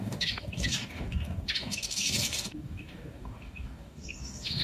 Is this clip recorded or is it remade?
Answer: remade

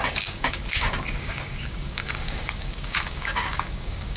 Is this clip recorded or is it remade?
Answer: remade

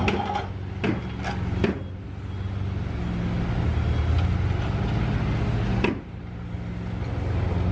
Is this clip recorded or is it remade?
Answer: recorded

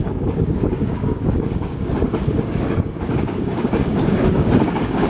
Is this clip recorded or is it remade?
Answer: remade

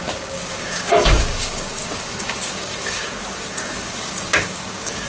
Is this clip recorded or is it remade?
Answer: remade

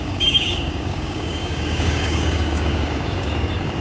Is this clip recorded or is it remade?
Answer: remade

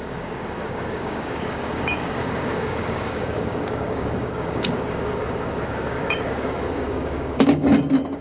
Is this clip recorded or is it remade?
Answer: remade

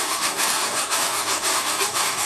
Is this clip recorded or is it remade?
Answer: remade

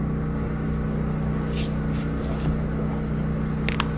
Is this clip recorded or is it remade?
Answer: recorded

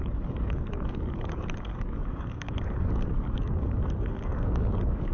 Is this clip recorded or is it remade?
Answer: remade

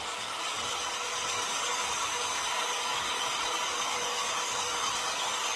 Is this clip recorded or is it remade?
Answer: remade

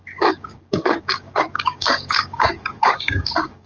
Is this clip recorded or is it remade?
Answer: remade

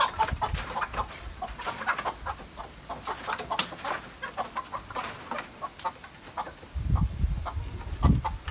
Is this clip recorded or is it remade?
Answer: recorded